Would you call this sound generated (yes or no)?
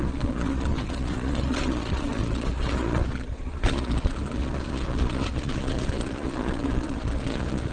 yes